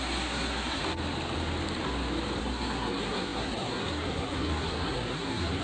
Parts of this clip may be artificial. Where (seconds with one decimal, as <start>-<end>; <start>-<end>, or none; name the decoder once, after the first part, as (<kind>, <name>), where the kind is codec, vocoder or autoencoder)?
0.0-0.8 (codec, SNAC); 2.4-5.6